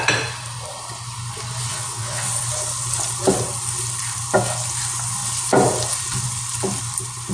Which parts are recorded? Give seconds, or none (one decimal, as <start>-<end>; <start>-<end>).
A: 0.0-1.7; 2.3-7.3